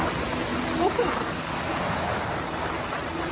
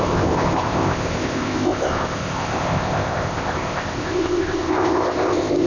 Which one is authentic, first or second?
first